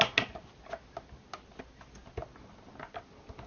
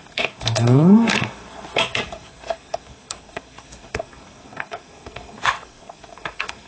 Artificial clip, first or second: second